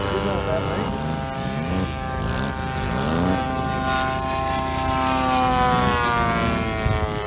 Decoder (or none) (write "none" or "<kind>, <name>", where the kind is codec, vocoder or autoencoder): none